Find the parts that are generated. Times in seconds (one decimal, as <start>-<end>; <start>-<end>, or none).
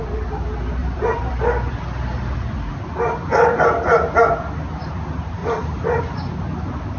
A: 0.8-1.8; 5.4-6.0